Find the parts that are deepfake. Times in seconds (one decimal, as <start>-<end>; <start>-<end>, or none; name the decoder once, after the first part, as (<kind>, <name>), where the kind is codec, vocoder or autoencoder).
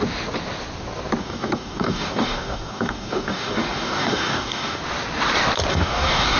1.2-4.8 (codec, DAC); 5.7-6.4